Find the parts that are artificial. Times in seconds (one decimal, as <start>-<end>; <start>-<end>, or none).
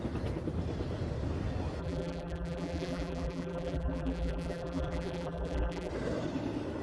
1.8-5.9